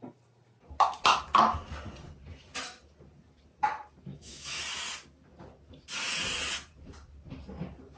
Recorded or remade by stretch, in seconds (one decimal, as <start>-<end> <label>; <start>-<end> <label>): 0.0-4.1 recorded; 4.1-4.6 remade; 4.6-8.0 recorded